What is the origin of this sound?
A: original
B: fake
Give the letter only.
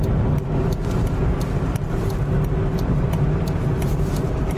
A